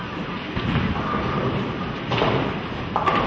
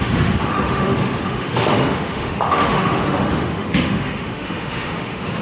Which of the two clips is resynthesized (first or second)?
second